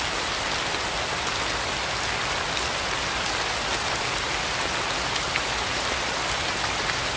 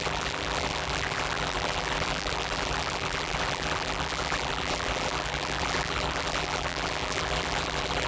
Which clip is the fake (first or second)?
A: second